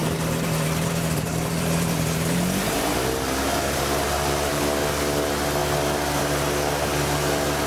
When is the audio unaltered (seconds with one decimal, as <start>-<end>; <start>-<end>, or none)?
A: 4.6-7.7